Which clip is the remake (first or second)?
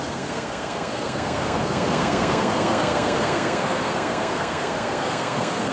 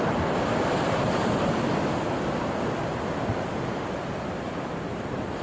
first